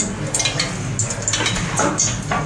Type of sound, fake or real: real